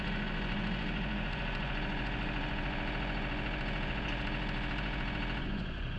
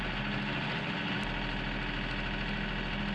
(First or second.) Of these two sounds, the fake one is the first